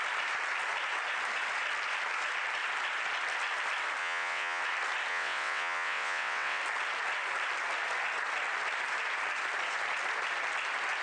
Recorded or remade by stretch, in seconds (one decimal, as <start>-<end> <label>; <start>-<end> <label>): 0.0-4.0 recorded; 4.0-4.6 remade; 4.6-5.1 recorded; 5.1-6.6 remade; 6.6-11.0 recorded